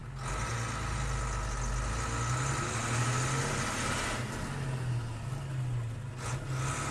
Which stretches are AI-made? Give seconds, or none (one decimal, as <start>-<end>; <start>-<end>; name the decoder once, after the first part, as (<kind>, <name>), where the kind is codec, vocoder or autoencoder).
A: none